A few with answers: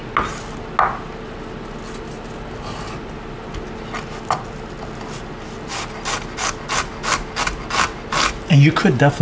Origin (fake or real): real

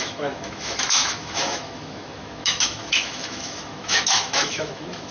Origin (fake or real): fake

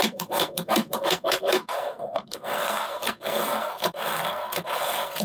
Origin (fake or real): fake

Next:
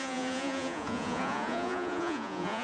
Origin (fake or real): fake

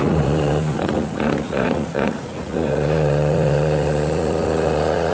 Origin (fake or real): fake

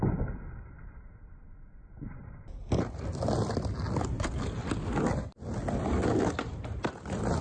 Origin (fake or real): real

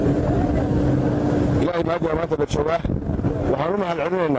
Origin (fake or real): real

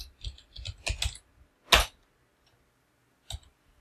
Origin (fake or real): real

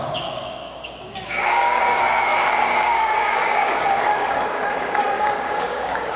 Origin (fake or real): fake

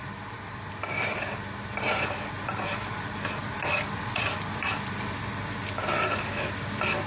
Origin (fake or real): real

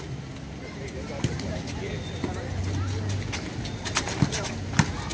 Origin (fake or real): real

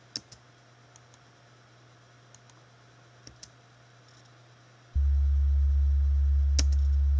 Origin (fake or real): real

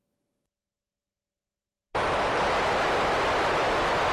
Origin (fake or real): real